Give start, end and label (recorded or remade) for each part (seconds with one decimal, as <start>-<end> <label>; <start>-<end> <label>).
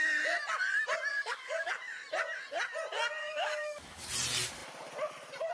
0.0-1.1 recorded; 1.1-1.7 remade; 1.7-3.2 recorded; 3.2-4.1 remade; 4.1-5.5 recorded